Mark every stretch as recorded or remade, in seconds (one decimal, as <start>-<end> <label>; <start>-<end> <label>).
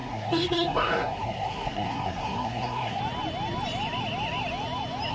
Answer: 0.0-3.0 remade; 3.0-5.1 recorded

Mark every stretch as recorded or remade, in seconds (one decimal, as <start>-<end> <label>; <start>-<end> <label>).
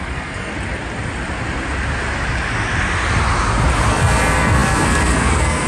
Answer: 0.0-0.5 remade; 0.5-3.9 recorded; 3.9-5.7 remade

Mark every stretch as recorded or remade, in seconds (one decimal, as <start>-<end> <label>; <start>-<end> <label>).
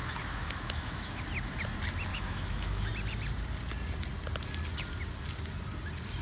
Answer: 0.0-1.2 remade; 1.2-2.1 recorded; 2.1-2.9 remade; 2.9-6.2 recorded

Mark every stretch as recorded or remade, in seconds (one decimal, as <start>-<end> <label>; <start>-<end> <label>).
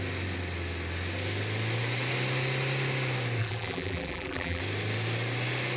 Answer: 0.0-3.4 recorded; 3.4-4.6 remade; 4.6-5.8 recorded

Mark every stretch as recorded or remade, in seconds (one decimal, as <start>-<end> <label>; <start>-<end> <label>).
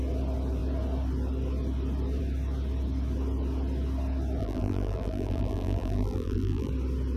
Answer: 0.0-4.4 recorded; 4.4-6.7 remade; 6.7-7.2 recorded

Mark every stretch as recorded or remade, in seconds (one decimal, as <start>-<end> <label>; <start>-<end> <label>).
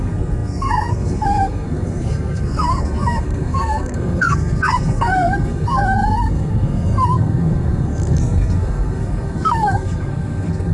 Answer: 0.0-10.7 remade